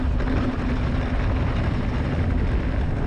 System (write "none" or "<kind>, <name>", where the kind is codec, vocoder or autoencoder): none